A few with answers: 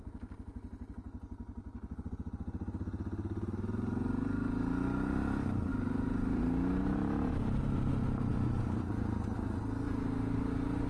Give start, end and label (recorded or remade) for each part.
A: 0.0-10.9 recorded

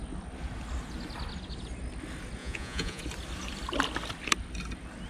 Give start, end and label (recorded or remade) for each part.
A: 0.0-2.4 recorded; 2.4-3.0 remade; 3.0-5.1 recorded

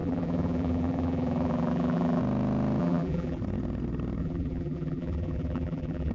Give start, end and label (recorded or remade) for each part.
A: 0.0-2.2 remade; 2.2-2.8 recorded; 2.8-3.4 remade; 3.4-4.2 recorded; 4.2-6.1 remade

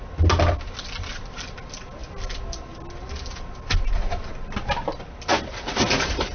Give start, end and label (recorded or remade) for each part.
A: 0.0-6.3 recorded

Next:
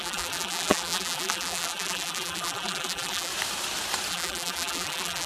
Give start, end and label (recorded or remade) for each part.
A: 0.0-3.3 remade; 3.3-4.1 recorded; 4.1-5.3 remade

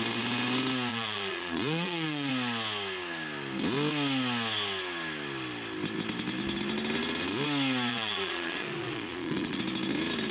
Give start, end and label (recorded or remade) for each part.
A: 0.0-0.9 recorded; 0.9-2.3 remade; 2.3-7.9 recorded; 7.9-9.6 remade; 9.6-10.3 recorded

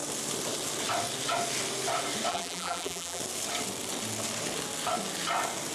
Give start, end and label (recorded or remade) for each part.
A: 0.0-2.3 recorded; 2.3-3.2 remade; 3.2-5.7 recorded